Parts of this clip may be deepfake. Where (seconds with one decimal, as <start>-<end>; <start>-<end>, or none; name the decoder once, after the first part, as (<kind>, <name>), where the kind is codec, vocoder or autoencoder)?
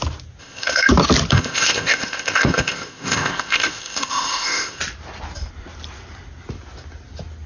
0.4-0.9 (codec, ZipCodec); 1.3-4.8